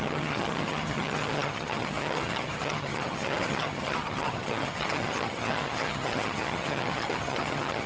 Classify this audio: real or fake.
fake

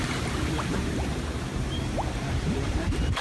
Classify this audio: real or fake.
fake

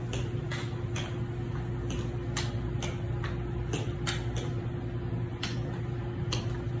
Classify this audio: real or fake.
real